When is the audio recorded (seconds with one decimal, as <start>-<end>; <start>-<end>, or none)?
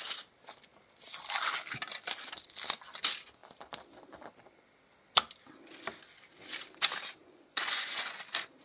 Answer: 0.0-7.2; 8.2-8.6